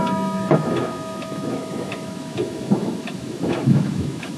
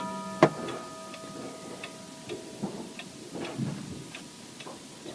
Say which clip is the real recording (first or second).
second